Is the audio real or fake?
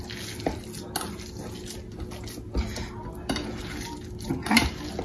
real